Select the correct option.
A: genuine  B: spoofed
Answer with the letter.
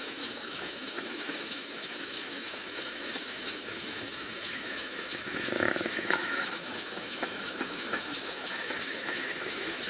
B